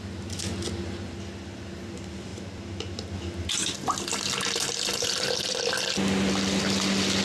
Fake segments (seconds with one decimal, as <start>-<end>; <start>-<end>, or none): none